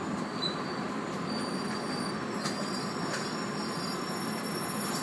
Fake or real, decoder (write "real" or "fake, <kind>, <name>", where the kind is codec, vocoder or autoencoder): real